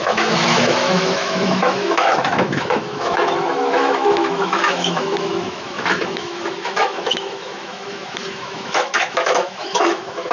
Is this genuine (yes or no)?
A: no